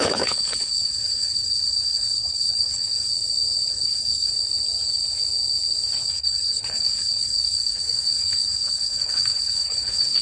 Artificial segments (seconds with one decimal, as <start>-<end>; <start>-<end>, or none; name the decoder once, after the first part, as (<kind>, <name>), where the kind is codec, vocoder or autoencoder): 0.0-3.1 (codec, HILCodec); 3.7-4.3; 6.1-10.2